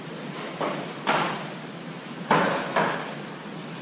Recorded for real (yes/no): yes